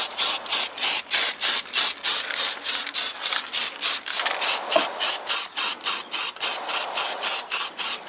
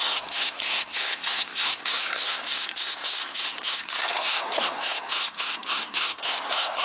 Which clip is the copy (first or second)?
second